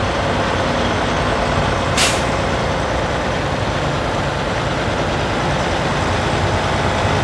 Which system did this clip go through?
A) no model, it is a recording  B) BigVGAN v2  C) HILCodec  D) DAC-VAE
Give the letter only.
A